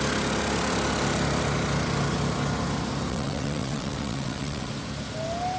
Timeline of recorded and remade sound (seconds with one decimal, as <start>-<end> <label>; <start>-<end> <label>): 0.0-3.1 recorded; 3.1-4.7 remade; 4.7-5.6 recorded